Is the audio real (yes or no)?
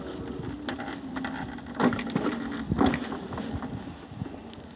yes